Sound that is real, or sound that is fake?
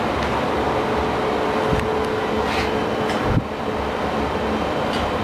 real